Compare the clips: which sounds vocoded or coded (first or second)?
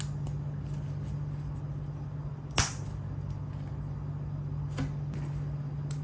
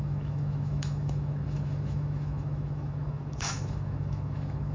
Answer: second